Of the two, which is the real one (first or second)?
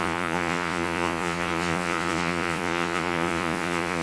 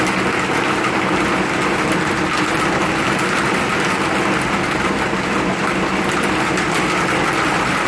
second